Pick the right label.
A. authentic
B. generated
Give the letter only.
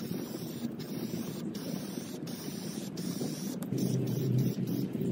B